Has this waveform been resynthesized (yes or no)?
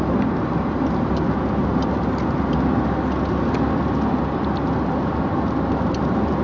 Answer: no